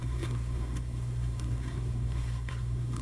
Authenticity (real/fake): fake